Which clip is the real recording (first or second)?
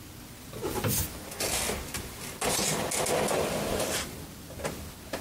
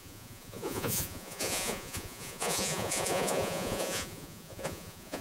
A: first